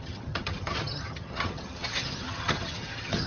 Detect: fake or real fake